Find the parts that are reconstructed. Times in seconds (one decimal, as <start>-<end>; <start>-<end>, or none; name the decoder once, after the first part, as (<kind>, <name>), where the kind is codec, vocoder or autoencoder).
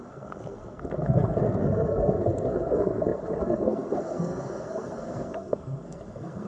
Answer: 0.0-6.5 (codec, SNAC)